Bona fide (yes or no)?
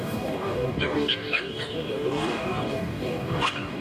no